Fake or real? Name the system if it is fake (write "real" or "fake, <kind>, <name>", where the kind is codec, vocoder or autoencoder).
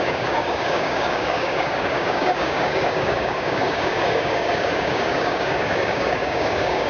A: fake, codec, DAC